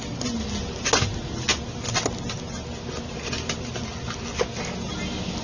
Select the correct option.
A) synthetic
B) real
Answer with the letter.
B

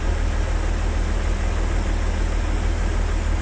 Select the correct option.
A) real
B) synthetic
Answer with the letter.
A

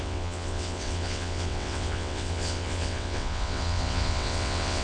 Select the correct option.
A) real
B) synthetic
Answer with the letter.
B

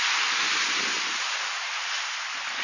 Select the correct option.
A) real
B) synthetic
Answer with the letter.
A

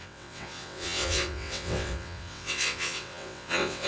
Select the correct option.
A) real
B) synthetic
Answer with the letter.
B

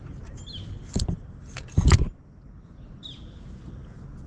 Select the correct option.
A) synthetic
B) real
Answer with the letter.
B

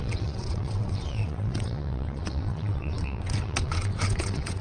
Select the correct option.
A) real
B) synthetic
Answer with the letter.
B